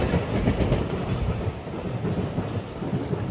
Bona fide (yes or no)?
yes